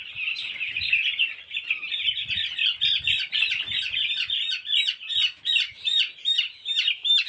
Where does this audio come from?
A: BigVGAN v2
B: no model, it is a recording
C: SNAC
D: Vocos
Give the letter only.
B